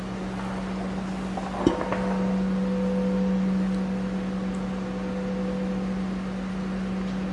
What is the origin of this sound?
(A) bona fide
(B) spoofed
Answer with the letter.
A